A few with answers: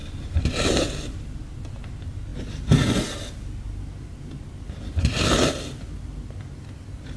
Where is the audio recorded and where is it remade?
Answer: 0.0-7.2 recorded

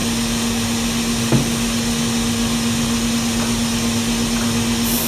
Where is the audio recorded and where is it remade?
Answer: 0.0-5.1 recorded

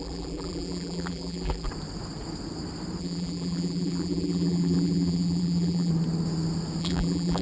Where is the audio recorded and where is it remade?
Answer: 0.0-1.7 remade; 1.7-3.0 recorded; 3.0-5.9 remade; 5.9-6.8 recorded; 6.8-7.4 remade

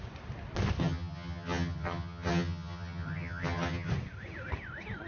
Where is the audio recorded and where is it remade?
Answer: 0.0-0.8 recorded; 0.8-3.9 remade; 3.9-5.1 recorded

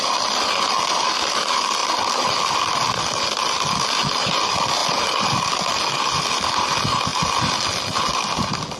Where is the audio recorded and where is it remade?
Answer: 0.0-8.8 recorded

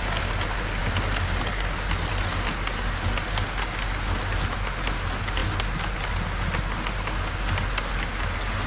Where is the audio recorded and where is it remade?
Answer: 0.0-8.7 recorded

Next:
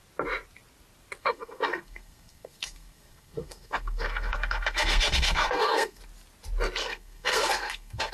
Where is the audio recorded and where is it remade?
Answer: 0.0-1.2 recorded; 1.2-6.0 remade; 6.0-6.8 recorded; 6.8-8.1 remade